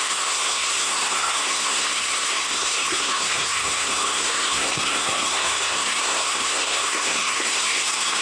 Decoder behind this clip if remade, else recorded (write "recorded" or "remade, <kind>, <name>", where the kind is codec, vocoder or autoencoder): remade, codec, SNAC